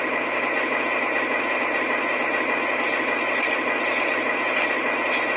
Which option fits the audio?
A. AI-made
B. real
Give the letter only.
B